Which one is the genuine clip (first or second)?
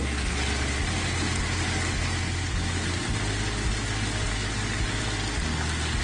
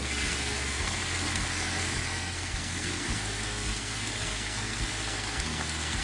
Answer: first